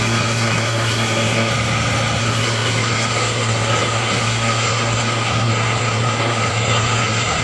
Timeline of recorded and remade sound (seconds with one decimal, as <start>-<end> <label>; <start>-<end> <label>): 0.0-1.5 remade; 1.5-2.2 recorded; 2.2-7.4 remade